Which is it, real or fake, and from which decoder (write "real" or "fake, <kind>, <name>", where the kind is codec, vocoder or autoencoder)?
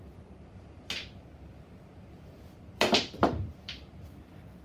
fake, vocoder, BigVGAN v2